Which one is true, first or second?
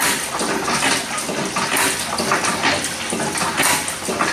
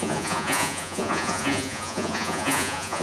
first